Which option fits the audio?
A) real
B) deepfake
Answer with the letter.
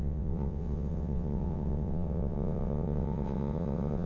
B